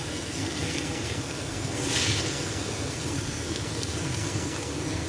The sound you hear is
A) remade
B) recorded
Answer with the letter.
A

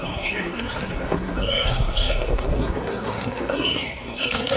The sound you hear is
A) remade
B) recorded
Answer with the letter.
A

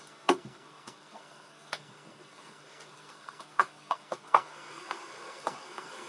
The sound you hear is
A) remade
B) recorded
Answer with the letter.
A